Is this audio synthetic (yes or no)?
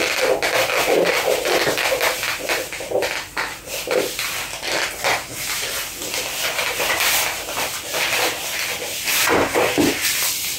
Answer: no